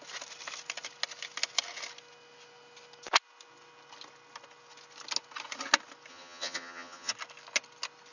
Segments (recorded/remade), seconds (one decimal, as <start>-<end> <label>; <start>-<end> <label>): 0.0-6.1 recorded; 6.1-7.1 remade; 7.1-8.1 recorded